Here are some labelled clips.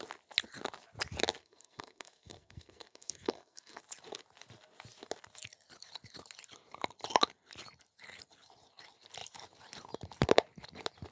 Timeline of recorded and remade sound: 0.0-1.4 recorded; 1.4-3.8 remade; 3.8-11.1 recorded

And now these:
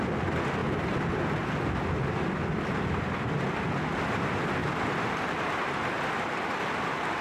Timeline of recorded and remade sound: 0.0-7.2 recorded

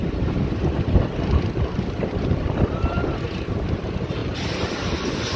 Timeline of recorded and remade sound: 0.0-3.2 recorded; 3.2-5.4 remade

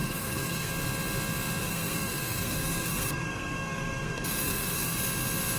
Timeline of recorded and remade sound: 0.0-0.7 remade; 0.7-1.6 recorded; 1.6-5.0 remade; 5.0-5.6 recorded

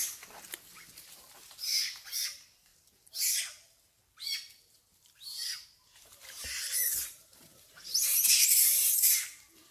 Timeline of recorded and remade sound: 0.0-2.7 remade; 2.7-4.2 recorded; 4.2-9.7 remade

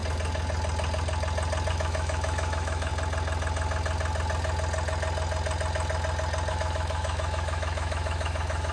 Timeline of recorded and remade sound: 0.0-1.7 recorded; 1.7-2.9 remade; 2.9-6.5 recorded; 6.5-8.7 remade

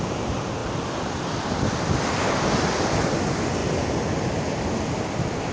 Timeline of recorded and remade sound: 0.0-5.5 recorded